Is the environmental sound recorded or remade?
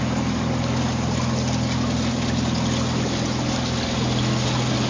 recorded